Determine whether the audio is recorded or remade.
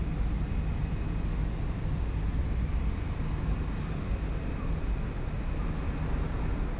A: recorded